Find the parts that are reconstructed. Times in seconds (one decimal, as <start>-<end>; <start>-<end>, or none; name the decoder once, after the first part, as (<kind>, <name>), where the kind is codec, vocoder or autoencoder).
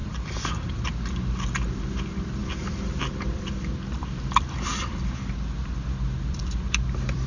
2.4-3.7 (vocoder, BigVGAN v2); 4.7-7.3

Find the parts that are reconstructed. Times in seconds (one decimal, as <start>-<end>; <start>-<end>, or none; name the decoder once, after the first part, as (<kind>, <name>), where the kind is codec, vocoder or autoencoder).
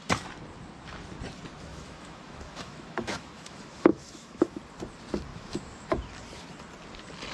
1.7-4.6 (autoencoder, DAC-VAE); 5.3-5.8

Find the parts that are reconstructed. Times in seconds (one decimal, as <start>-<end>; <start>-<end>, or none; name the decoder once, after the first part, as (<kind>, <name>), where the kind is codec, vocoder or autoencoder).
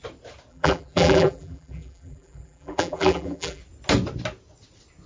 0.5-3.6 (vocoder, BigVGAN v2)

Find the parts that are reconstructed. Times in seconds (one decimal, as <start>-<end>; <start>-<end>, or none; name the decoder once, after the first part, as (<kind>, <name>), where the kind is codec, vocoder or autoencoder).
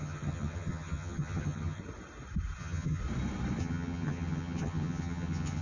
0.0-1.8 (vocoder, HiFi-GAN); 2.6-3.0; 3.6-5.6